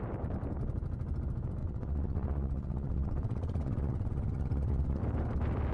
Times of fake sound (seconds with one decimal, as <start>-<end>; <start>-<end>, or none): 1.6-5.0